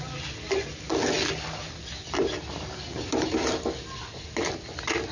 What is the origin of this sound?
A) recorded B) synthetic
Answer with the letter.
A